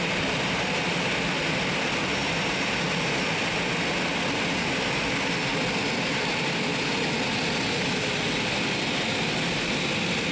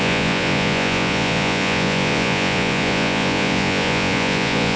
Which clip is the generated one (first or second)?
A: second